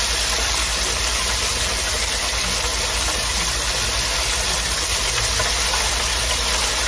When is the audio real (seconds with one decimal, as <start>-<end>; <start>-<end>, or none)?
0.0-6.9